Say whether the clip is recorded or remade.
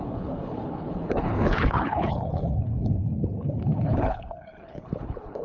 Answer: remade